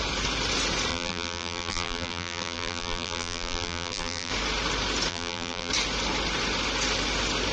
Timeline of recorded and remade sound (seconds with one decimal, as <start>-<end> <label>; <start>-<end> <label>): 0.0-0.9 recorded; 0.9-4.3 remade; 4.3-5.1 recorded; 5.1-5.7 remade; 5.7-7.5 recorded